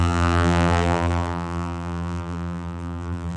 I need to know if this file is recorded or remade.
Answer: remade